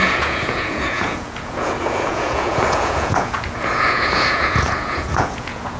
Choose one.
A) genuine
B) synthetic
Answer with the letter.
B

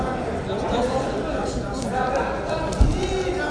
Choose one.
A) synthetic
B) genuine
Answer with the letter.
B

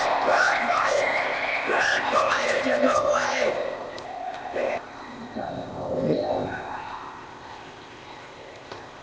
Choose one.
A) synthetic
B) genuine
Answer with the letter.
A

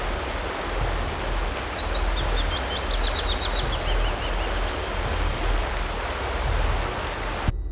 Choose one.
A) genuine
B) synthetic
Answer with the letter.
A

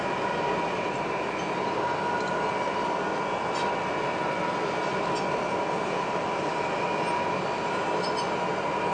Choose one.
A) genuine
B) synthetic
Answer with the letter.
A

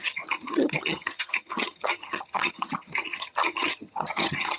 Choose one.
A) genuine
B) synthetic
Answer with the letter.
B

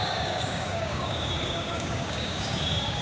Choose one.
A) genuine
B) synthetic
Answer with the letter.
B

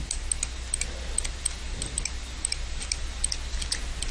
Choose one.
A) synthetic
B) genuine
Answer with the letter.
B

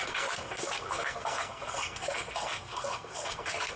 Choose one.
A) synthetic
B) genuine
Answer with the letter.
A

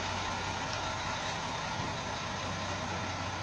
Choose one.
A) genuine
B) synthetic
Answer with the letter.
A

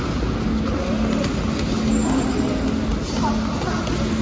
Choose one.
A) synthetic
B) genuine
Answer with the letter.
B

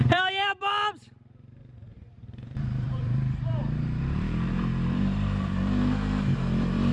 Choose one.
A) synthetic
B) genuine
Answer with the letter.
A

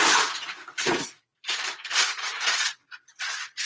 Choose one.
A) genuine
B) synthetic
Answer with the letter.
B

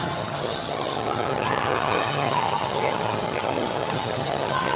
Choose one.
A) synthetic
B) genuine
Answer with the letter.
A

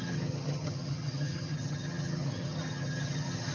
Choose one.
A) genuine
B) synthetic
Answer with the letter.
B